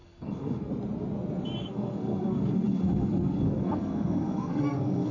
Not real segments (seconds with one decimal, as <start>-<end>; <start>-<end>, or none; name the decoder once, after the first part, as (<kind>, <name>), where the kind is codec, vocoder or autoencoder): 0.0-0.7 (codec, SNAC); 1.6-5.1